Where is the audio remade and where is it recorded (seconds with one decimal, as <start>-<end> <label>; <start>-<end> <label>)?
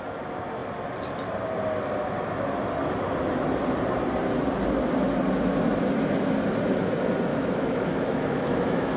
0.0-7.3 recorded; 7.3-9.0 remade